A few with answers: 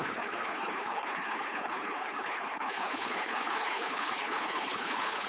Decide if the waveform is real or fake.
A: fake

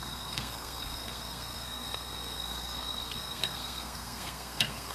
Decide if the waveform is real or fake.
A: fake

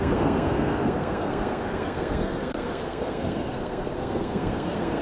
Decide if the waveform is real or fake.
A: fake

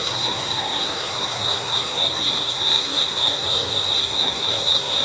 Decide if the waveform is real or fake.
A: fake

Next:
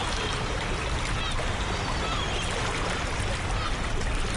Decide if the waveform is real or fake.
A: real